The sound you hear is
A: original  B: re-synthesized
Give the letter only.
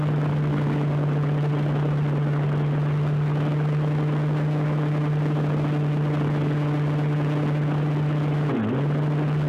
A